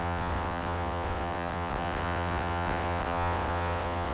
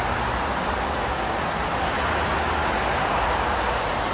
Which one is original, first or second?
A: second